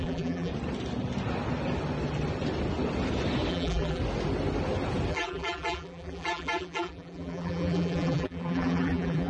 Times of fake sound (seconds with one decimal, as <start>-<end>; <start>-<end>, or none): 0.0-0.5; 3.5-4.0; 5.1-9.3